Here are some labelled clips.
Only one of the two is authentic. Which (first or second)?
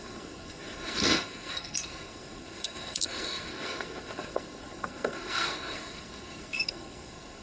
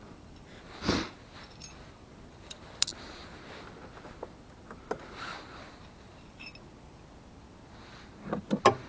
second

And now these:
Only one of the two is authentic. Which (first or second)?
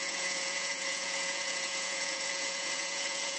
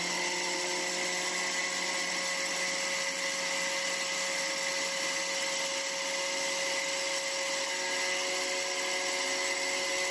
second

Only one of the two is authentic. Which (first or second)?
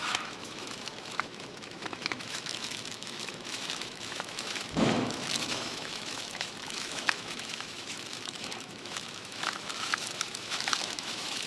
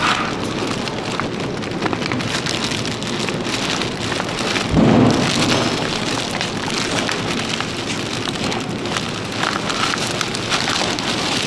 second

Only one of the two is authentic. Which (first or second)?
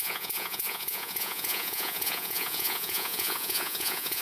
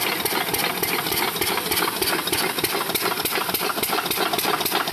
second